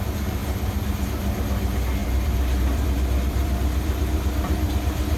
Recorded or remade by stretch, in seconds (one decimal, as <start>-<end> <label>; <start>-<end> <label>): 0.0-2.0 recorded; 2.0-5.2 remade